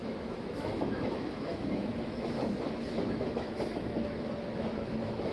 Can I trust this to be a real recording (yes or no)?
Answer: no